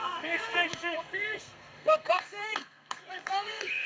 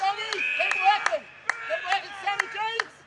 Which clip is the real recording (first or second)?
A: second